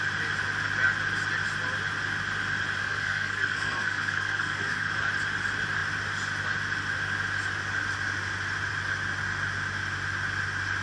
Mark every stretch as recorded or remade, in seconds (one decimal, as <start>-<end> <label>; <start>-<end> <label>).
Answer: 0.0-2.8 recorded; 2.8-4.9 remade; 4.9-10.8 recorded